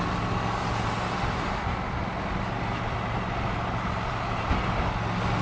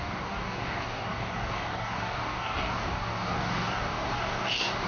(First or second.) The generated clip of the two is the second